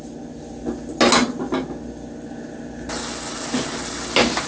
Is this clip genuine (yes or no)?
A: yes